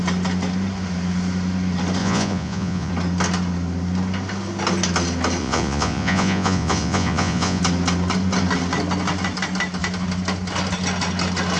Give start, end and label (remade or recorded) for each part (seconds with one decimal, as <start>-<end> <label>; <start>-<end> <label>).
0.0-2.0 recorded; 2.0-2.9 remade; 2.9-5.4 recorded; 5.4-7.6 remade; 7.6-11.6 recorded